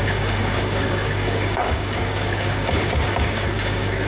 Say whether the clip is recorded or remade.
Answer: remade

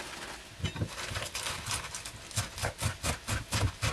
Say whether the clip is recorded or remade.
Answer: recorded